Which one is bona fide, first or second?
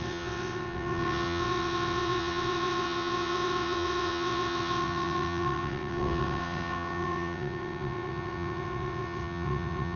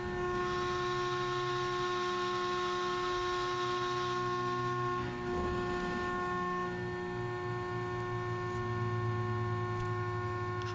second